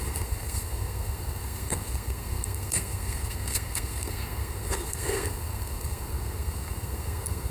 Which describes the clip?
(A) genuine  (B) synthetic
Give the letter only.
B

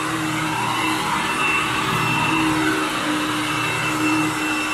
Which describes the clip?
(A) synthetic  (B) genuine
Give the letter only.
B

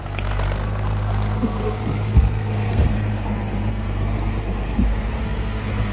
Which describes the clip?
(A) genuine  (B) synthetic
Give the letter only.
B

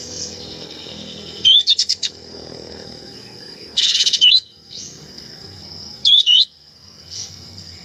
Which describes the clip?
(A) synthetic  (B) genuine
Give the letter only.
A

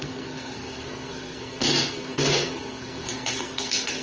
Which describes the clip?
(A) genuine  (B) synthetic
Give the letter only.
B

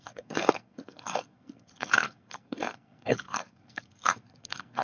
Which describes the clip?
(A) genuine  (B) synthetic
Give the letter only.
B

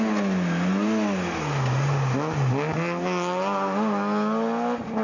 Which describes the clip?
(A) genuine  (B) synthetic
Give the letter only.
A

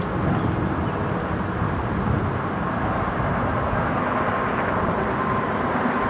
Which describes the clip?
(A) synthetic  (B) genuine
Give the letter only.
B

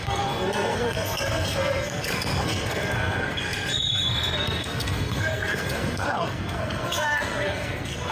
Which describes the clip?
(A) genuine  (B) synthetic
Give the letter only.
B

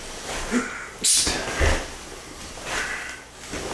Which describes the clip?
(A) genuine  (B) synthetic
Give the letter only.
A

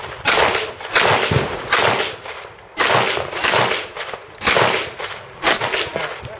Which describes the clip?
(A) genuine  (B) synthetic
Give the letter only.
A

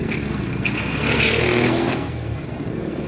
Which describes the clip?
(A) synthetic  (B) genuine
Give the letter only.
A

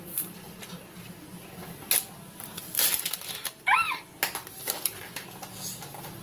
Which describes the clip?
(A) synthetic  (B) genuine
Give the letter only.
B